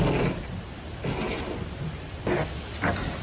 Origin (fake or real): real